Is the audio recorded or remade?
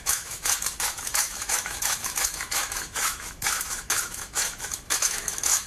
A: remade